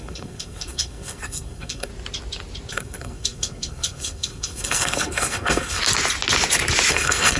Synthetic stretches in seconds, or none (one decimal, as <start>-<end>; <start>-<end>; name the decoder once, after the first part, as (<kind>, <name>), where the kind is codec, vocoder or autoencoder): 0.0-1.9 (codec, SNAC); 2.7-5.8; 6.9-7.4

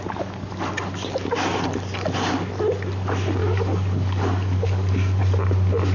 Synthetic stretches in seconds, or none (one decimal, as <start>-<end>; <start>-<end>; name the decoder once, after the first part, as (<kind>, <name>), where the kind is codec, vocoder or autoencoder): 3.4-5.2 (codec, DAC)

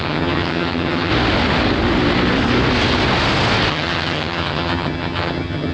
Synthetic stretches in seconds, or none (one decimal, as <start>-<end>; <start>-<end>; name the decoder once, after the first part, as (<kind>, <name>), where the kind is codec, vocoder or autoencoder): 0.0-1.1 (vocoder, HiFi-GAN); 3.7-5.7

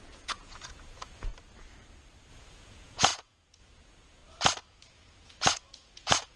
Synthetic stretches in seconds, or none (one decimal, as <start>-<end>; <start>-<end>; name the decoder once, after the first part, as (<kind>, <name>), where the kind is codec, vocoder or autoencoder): 0.0-1.3 (vocoder, Vocos); 2.3-4.2; 4.9-6.4

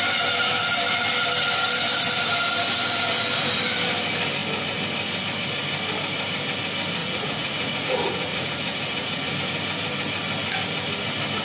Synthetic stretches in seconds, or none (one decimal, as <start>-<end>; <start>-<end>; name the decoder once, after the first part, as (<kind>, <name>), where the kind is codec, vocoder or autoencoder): 7.0-9.3 (vocoder, Vocos)

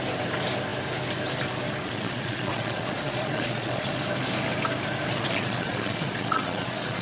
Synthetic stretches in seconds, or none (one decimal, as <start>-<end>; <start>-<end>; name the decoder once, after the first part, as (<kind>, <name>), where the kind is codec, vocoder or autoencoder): 1.8-3.9 (vocoder, Vocos); 5.1-7.0